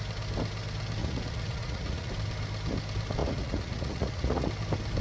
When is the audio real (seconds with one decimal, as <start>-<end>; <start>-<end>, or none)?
0.0-1.0; 2.1-3.2; 4.5-5.0